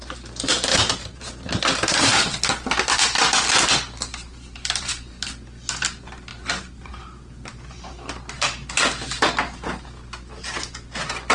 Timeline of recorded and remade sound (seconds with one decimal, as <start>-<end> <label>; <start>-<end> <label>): 0.0-0.7 recorded; 0.7-2.2 remade; 2.2-4.1 recorded; 4.1-5.1 remade; 5.1-6.3 recorded; 6.3-8.7 remade; 8.7-11.3 recorded